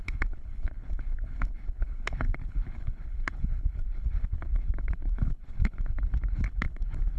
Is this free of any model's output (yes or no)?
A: no